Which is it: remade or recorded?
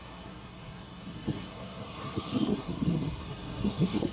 remade